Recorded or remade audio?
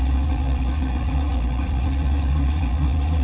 remade